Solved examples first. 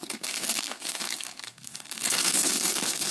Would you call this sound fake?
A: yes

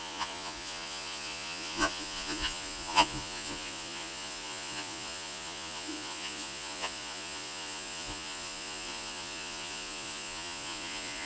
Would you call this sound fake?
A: yes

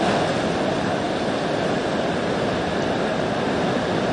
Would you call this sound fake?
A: no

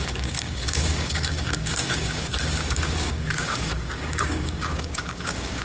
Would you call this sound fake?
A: yes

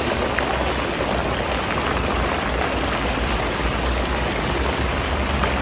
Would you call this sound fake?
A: no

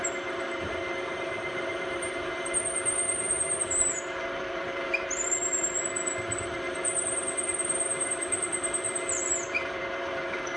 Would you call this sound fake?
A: yes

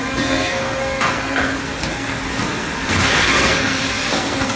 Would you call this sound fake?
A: yes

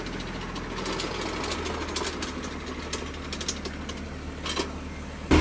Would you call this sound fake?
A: no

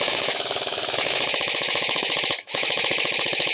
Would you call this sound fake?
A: yes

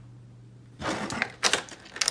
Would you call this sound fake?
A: no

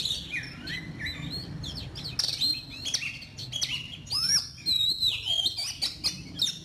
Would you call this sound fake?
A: no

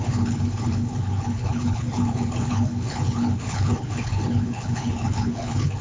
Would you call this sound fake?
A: yes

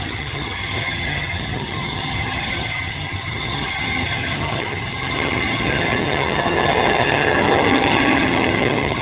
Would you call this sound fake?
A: yes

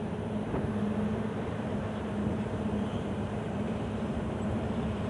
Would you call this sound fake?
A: yes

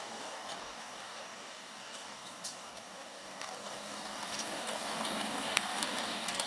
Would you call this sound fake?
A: yes